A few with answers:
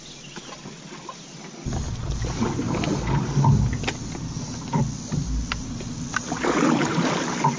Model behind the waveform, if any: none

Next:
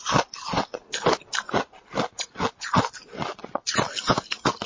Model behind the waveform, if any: none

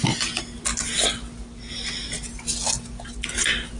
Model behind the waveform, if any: none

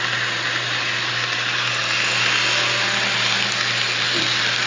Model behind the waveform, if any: none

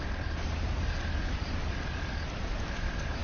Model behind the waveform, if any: none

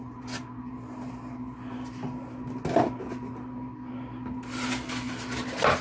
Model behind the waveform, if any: none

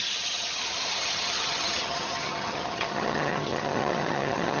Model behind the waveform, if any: vocoder, HiFi-GAN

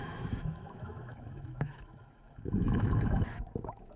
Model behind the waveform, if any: autoencoder, DAC-VAE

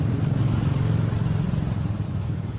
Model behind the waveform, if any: none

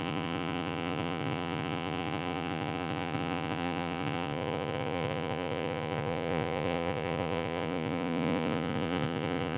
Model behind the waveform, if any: vocoder, Vocos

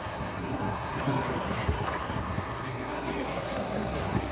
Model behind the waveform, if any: codec, SNAC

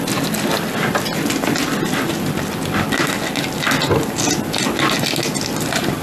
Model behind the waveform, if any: none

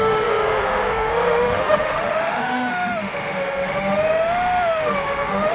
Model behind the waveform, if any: autoencoder, DAC-VAE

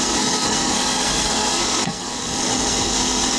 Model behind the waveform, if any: codec, SNAC